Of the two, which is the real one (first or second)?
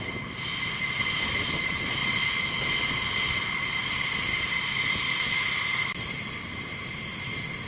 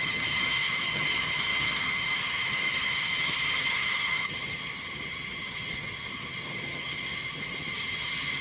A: first